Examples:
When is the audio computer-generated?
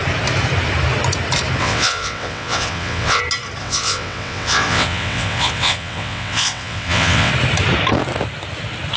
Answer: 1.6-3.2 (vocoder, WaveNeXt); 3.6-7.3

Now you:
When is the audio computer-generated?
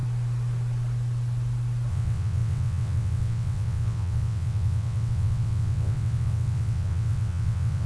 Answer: 1.9-7.9 (vocoder, WaveNeXt)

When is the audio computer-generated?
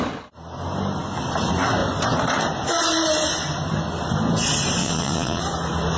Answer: 4.8-5.4 (vocoder, WaveNeXt)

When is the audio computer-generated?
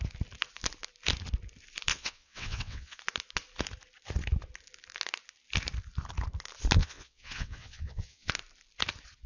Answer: 1.9-3.0 (vocoder, WaveNeXt); 6.8-8.3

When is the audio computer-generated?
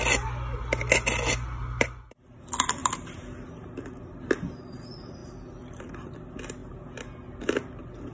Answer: none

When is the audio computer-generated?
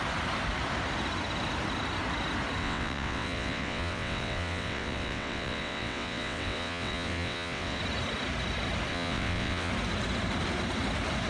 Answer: 2.6-7.8 (vocoder, WaveNeXt); 8.9-9.7